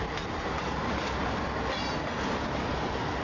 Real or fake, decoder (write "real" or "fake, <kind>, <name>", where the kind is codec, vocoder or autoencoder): real